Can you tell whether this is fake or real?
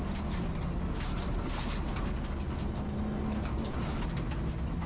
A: real